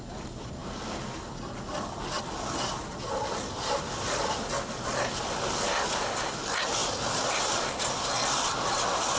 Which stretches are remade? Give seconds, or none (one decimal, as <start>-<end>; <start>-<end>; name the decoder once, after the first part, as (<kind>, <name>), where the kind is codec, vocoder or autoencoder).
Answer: none